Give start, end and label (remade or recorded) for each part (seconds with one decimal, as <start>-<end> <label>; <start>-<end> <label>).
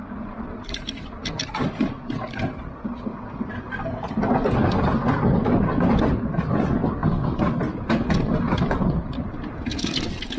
0.0-10.4 recorded